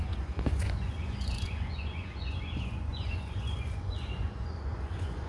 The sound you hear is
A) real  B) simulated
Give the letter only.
B